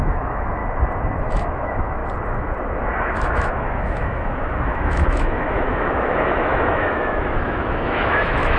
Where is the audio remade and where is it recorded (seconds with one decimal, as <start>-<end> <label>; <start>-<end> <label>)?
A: 0.0-0.6 remade; 0.6-1.2 recorded; 1.2-2.0 remade; 2.0-3.0 recorded; 3.0-8.6 remade